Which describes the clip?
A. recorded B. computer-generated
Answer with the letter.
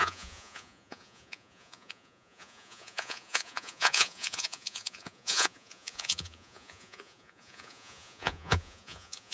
B